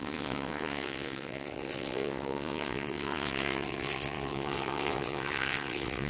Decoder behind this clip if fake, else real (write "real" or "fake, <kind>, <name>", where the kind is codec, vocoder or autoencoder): fake, vocoder, WaveNeXt